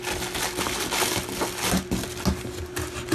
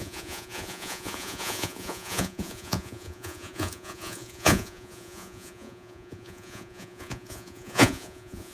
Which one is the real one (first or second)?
first